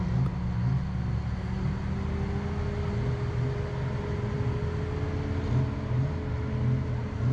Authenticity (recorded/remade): recorded